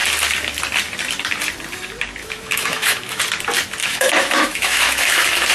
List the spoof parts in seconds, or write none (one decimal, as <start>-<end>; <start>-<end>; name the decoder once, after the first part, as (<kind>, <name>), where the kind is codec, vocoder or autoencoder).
2.2-3.2 (autoencoder, DAC-VAE); 3.8-5.5